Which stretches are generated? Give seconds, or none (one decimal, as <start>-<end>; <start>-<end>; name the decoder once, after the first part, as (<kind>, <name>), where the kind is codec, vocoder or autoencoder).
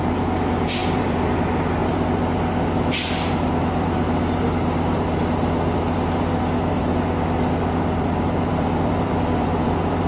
0.8-1.4 (vocoder, BigVGAN v2); 8.5-10.1